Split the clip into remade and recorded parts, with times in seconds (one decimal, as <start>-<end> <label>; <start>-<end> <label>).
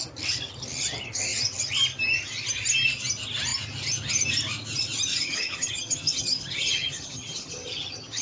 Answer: 0.0-5.1 recorded; 5.1-8.2 remade